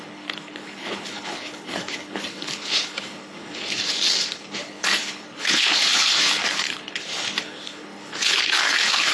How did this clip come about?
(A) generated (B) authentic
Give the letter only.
A